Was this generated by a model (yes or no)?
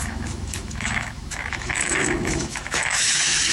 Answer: yes